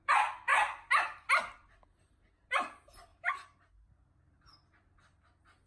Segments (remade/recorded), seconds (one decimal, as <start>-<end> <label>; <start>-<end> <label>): 0.0-5.7 recorded